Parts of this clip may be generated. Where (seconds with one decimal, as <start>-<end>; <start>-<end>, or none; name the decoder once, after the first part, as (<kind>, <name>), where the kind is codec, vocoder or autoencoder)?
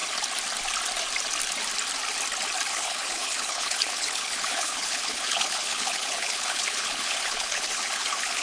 2.7-8.4 (codec, HILCodec)